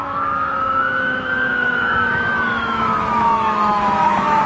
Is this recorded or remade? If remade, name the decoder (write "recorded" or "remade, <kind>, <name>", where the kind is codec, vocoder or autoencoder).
remade, autoencoder, DAC-VAE